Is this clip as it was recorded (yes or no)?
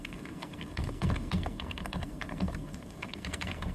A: no